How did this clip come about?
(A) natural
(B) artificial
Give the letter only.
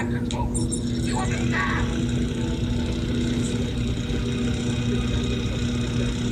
A